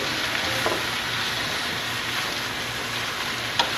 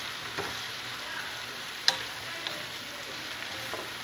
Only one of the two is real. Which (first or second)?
first